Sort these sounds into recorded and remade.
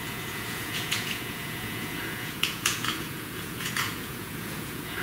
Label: remade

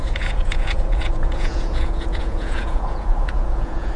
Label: remade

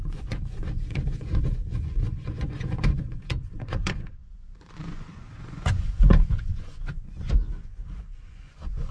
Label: remade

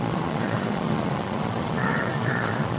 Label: remade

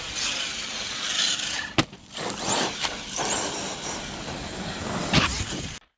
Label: recorded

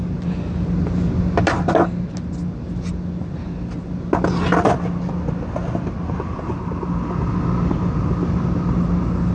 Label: recorded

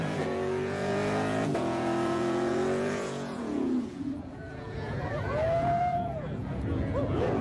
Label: remade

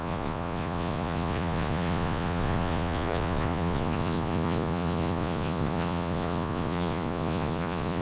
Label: remade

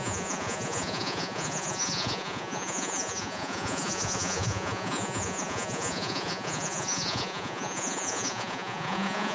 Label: remade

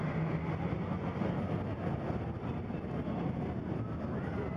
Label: recorded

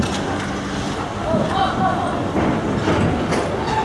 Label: recorded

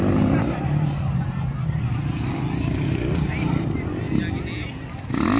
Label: recorded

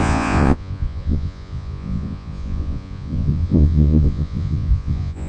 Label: remade